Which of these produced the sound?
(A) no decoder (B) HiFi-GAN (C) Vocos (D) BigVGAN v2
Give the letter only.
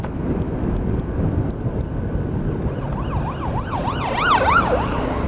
A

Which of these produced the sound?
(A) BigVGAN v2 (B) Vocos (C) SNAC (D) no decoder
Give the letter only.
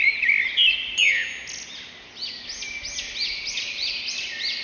D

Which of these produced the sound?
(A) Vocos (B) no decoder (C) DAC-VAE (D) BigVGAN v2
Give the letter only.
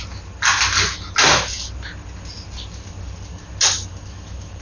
B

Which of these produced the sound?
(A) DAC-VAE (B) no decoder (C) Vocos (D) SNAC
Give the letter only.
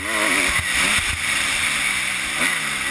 B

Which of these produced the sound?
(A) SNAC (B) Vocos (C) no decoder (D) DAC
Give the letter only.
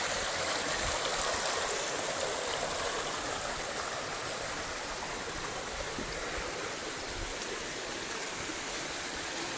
C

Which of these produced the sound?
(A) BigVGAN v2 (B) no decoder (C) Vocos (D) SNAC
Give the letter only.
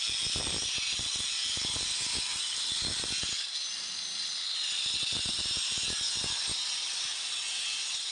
B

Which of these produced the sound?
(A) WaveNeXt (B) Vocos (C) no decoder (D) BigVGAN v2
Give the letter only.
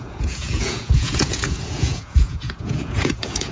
B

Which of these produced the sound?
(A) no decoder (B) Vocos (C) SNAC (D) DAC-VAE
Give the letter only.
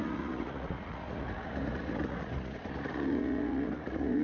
B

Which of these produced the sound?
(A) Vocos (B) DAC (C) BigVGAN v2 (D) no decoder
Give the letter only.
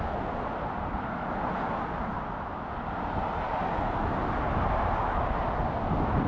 D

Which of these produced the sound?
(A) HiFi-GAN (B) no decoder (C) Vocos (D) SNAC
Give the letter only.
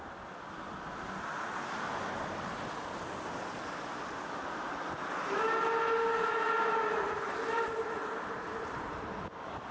B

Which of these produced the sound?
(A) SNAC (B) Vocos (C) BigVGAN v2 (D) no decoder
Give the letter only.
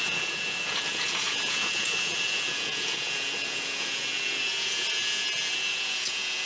B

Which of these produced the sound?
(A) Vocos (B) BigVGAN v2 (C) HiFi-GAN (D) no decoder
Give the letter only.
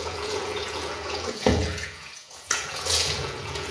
A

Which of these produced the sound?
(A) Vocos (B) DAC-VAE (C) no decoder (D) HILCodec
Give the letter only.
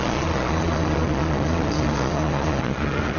A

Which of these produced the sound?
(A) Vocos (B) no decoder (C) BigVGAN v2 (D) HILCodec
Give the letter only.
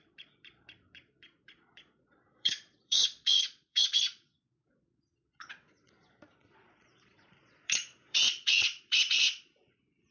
A